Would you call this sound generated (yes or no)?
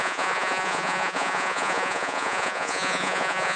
yes